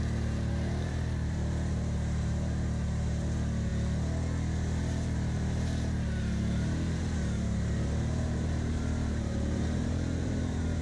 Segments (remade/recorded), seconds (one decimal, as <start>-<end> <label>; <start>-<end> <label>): 0.0-3.7 remade; 3.7-4.8 recorded; 4.8-10.8 remade